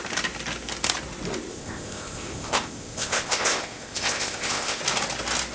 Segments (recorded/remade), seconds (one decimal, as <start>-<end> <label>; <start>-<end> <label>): 0.0-1.5 recorded; 1.5-4.8 remade; 4.8-5.5 recorded